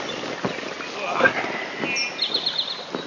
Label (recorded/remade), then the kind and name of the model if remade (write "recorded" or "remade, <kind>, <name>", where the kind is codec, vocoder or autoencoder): recorded